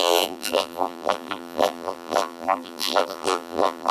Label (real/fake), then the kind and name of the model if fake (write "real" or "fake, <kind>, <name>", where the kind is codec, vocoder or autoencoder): fake, vocoder, BigVGAN v2